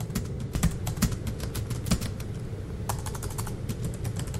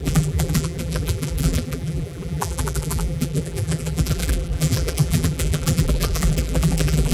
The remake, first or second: second